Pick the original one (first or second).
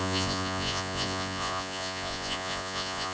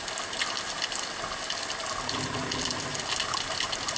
second